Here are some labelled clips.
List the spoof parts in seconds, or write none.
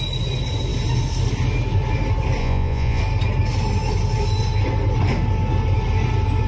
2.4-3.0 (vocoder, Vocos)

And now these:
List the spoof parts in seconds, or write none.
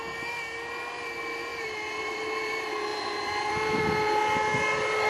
1.5-2.5 (vocoder, BigVGAN v2); 2.9-3.8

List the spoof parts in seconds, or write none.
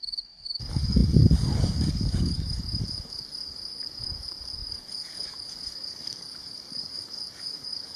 0.0-8.0 (codec, DAC)